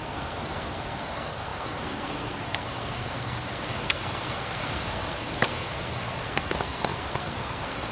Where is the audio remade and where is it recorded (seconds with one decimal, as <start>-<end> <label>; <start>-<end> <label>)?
0.0-7.9 remade